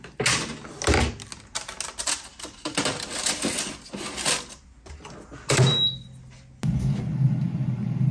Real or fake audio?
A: real